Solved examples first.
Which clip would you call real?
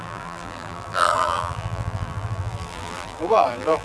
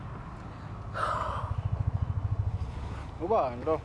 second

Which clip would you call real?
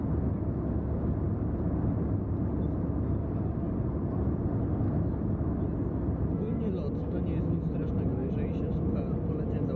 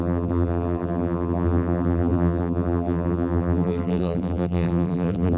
first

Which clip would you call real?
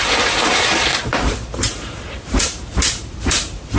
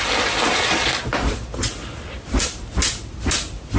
second